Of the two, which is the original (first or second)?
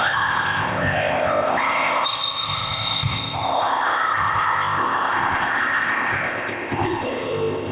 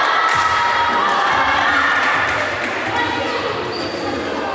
second